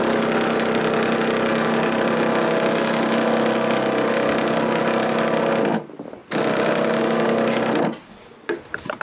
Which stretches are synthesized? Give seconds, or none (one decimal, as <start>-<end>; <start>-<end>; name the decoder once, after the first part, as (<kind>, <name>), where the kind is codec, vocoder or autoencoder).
none